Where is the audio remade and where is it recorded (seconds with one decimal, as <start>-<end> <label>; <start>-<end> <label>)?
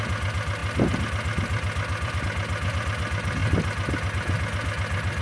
0.0-5.2 recorded